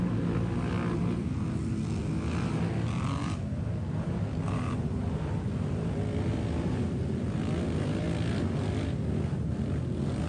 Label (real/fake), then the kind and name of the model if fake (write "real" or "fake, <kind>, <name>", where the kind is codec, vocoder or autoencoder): real